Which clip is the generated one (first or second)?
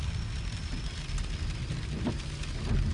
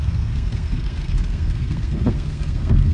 second